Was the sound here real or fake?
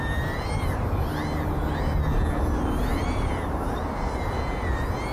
real